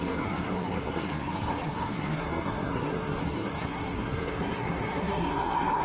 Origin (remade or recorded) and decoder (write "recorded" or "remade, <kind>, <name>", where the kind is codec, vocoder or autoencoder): remade, codec, SNAC